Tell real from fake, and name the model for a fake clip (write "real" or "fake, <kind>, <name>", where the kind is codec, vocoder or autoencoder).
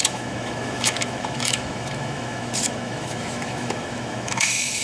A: fake, autoencoder, DAC-VAE